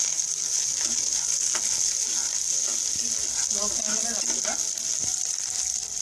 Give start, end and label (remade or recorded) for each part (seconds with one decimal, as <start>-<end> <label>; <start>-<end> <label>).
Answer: 0.0-6.0 recorded